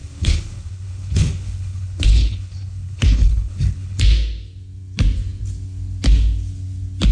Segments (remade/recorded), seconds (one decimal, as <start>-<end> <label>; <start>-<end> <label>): 0.0-4.0 remade; 4.0-7.1 recorded